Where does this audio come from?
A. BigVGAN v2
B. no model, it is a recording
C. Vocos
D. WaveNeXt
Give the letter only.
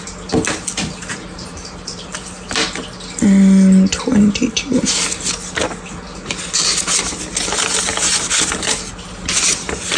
B